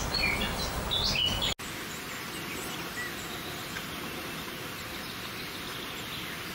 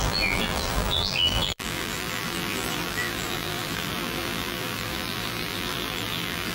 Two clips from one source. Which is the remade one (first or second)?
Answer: second